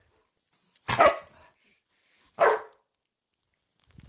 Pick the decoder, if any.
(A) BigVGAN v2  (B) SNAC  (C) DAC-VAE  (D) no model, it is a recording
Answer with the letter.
D